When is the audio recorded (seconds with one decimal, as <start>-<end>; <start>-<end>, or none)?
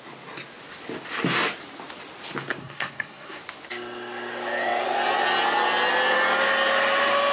0.0-2.6; 3.4-7.3